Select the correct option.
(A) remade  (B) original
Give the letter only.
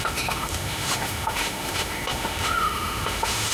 A